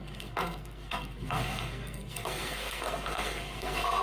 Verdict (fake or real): fake